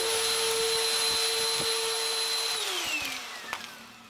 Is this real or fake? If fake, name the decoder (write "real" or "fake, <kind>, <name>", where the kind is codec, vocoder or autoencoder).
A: real